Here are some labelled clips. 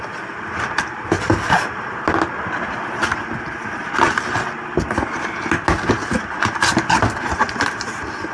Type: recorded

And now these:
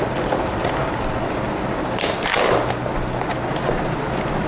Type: recorded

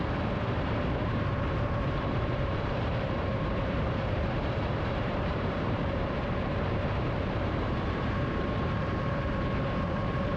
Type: remade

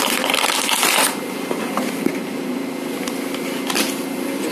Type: recorded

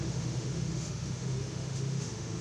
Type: remade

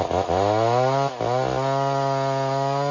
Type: recorded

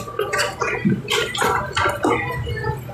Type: remade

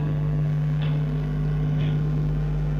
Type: remade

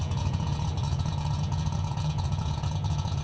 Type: remade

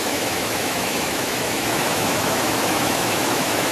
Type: remade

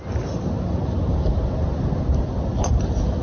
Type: recorded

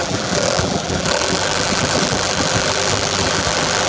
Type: remade